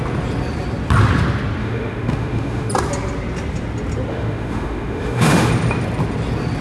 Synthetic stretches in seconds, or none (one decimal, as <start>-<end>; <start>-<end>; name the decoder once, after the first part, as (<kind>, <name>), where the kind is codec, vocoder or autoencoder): 1.6-2.7 (autoencoder, DAC-VAE); 4.1-5.5